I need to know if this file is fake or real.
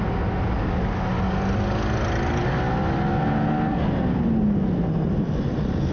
real